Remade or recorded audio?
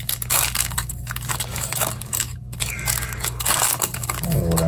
remade